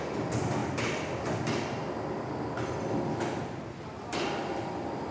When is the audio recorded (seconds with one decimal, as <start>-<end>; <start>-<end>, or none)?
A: 0.0-5.1